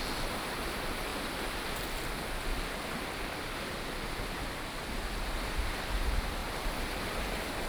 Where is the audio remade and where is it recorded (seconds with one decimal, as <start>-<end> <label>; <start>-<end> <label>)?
0.0-7.7 recorded